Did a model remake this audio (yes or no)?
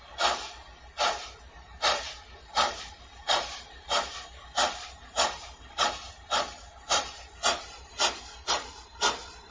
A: yes